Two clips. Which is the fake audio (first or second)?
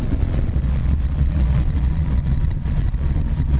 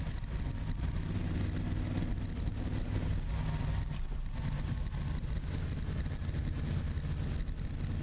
first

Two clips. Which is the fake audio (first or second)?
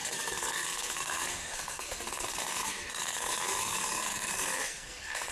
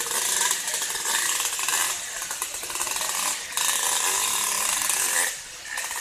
first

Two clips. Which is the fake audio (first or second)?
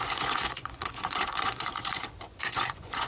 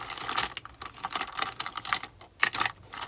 first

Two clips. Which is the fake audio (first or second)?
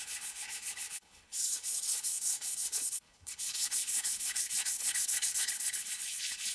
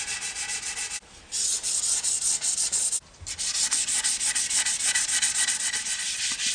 first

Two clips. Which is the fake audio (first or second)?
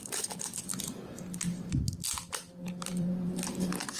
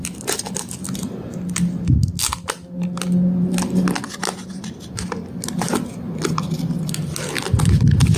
first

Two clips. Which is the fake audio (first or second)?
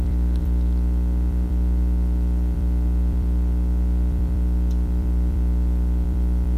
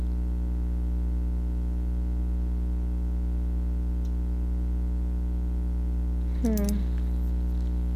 first